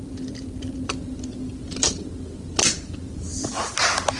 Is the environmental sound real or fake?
real